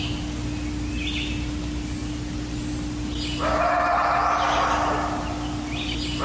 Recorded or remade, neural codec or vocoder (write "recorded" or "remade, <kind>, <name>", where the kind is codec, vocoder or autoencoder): recorded